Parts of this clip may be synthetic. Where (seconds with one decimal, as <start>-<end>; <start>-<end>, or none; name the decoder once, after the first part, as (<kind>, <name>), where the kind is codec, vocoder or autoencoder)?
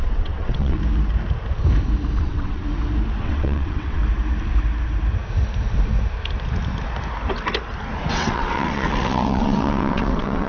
0.0-0.8 (vocoder, WaveNeXt); 2.2-2.6; 3.2-4.0; 8.1-10.5